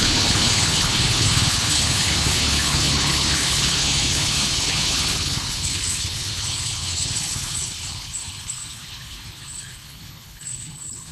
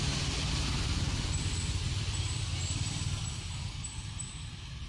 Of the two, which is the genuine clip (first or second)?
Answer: second